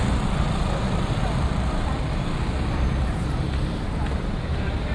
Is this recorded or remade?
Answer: remade